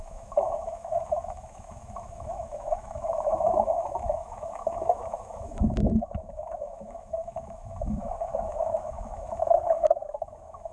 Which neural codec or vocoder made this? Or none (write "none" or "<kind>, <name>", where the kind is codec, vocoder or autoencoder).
autoencoder, DAC-VAE